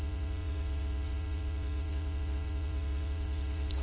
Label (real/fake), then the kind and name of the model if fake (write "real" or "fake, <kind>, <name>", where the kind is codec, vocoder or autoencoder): fake, vocoder, WaveNeXt